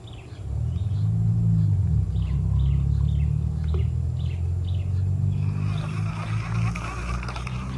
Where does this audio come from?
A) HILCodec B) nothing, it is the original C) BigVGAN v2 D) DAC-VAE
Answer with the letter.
B